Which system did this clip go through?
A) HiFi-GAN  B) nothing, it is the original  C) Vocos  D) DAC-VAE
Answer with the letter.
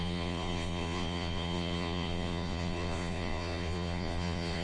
C